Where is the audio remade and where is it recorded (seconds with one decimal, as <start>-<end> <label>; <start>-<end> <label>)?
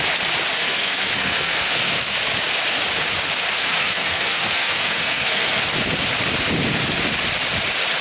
0.0-0.6 recorded; 0.6-2.2 remade; 2.2-3.6 recorded; 3.6-5.6 remade; 5.6-8.0 recorded